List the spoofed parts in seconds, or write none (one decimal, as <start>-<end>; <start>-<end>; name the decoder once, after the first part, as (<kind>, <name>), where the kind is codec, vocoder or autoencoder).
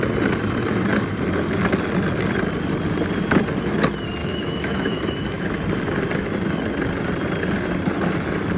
4.2-5.4 (autoencoder, DAC-VAE)